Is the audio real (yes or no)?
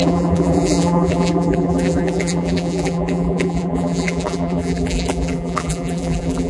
no